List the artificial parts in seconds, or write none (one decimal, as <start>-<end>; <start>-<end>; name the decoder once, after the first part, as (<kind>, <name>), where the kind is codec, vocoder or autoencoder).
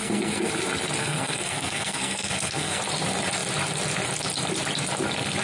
0.0-0.5 (codec, SNAC); 1.0-2.8